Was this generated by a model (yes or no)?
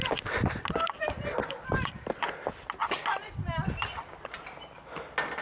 no